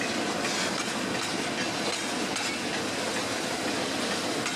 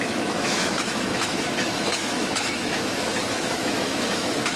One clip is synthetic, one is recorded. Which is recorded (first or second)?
first